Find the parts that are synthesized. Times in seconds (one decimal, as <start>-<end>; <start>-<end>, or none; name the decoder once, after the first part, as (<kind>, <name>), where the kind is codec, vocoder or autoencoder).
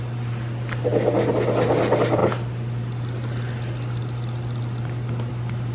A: none